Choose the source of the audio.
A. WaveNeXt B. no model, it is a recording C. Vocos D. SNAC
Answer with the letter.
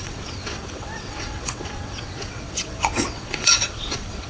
A